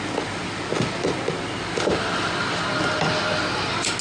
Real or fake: real